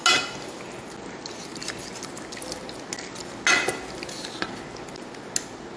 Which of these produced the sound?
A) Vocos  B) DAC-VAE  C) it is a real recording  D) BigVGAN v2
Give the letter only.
C